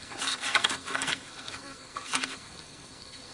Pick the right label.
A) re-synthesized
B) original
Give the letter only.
A